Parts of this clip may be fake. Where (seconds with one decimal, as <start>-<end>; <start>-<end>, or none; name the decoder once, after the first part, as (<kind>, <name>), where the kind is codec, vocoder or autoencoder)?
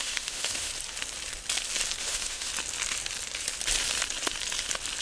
0.0-0.7 (autoencoder, DAC-VAE); 2.0-2.5